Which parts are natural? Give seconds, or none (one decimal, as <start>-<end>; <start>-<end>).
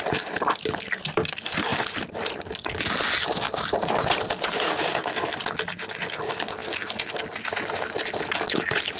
0.0-9.0